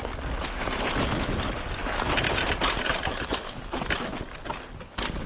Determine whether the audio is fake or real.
real